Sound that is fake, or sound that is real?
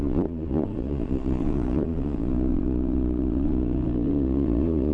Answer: fake